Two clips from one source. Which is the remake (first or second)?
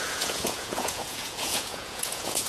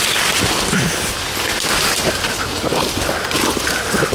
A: first